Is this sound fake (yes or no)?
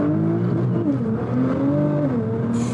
no